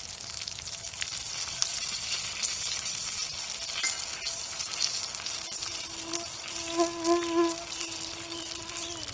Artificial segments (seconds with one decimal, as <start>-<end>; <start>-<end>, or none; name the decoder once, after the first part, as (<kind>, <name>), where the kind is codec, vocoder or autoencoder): none